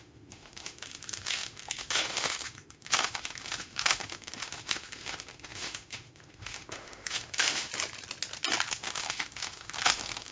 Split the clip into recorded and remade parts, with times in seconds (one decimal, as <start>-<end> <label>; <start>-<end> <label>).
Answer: 0.0-7.7 remade; 7.7-8.7 recorded; 8.7-10.3 remade